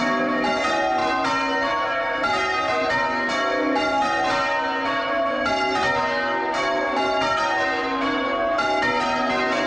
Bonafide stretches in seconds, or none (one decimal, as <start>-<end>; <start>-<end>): 0.0-9.7

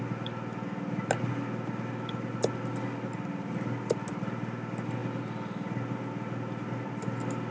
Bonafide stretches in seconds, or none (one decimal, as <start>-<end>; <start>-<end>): 0.0-7.5

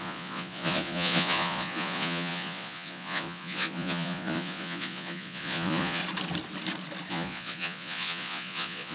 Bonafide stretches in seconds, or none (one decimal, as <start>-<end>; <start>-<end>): 6.0-7.1